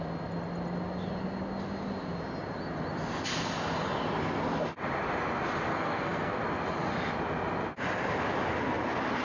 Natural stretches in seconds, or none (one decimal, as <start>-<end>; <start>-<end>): 0.0-5.7; 6.4-9.2